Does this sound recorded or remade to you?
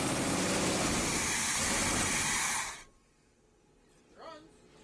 recorded